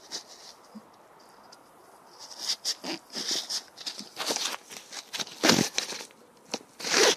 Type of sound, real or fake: real